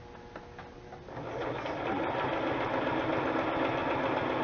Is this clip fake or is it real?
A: real